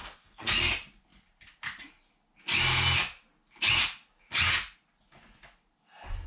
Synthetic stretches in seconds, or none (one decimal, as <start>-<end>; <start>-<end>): 0.0-0.7